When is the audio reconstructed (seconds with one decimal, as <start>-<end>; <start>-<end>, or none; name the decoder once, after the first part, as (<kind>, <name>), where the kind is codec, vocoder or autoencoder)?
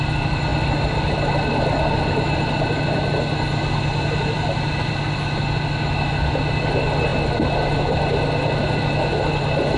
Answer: none